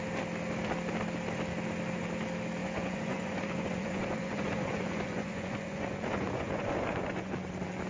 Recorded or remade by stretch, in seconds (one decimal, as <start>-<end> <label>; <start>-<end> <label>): 0.0-2.6 recorded; 2.6-7.3 remade; 7.3-7.9 recorded